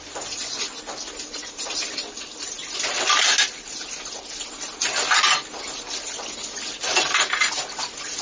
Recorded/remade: recorded